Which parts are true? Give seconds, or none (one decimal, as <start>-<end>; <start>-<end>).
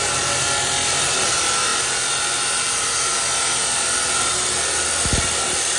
0.0-5.8